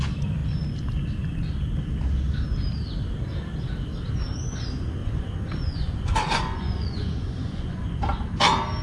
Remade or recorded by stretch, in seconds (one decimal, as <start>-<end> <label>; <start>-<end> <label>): 0.0-5.0 recorded; 5.0-8.0 remade; 8.0-8.8 recorded